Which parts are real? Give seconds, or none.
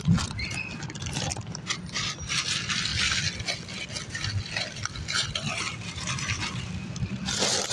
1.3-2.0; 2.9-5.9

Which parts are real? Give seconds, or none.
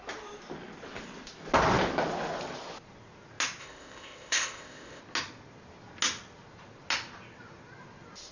0.0-3.6; 5.0-8.3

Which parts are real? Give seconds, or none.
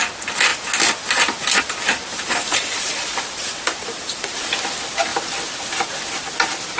0.0-2.1; 4.6-6.8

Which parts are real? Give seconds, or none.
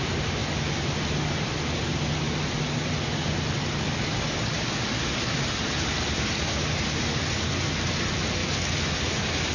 0.0-9.5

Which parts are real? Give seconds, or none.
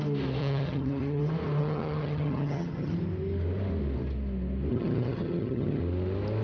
0.0-0.4; 1.2-1.6; 2.9-4.7; 5.8-6.4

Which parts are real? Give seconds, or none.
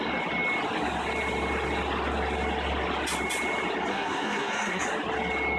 0.0-3.9; 4.8-5.6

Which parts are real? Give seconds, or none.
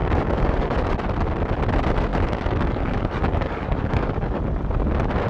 0.8-2.1; 4.4-5.3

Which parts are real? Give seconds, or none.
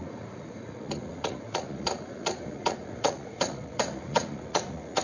none